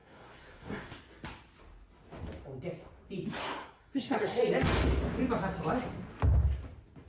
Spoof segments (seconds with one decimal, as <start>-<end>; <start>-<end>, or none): 0.0-1.0; 3.4-4.4